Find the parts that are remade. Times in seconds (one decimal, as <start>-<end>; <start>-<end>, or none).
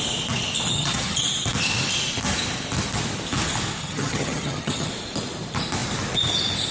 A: 0.7-1.2; 3.8-4.9